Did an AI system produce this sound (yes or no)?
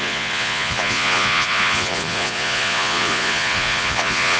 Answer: yes